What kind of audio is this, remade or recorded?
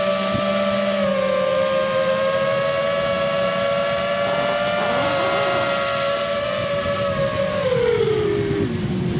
recorded